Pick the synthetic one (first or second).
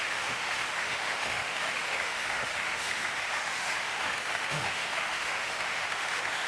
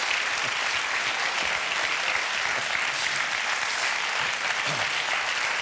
first